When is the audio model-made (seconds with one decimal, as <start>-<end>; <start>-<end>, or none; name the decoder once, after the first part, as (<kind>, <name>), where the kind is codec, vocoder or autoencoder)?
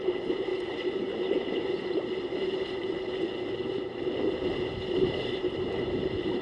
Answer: 0.0-0.5 (vocoder, BigVGAN v2); 4.1-6.4